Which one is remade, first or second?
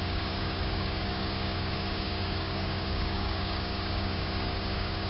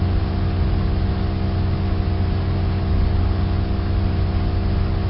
first